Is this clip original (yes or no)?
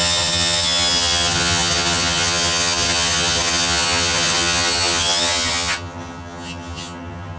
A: no